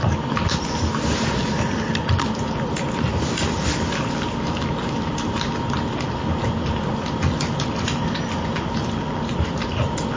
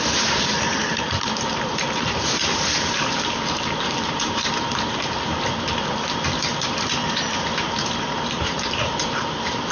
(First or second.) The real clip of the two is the first